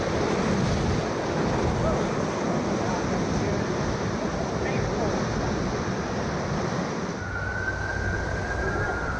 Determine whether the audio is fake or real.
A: real